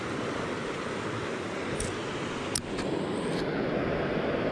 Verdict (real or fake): real